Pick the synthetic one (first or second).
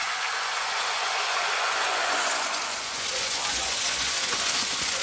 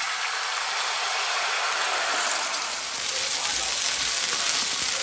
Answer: first